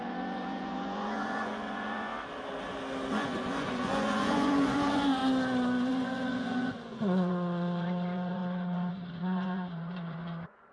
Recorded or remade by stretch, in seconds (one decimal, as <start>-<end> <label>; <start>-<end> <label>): 0.0-2.1 remade; 2.1-3.1 recorded; 3.1-5.2 remade; 5.2-5.9 recorded; 5.9-10.7 remade